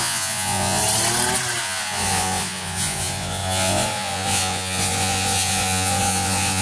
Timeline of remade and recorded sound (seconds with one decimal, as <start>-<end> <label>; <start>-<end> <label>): 0.0-0.8 remade; 0.8-1.6 recorded; 1.6-6.6 remade